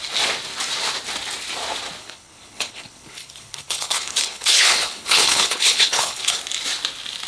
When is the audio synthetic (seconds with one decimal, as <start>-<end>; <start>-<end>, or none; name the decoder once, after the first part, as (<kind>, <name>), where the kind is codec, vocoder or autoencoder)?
2.0-6.4 (codec, HILCodec)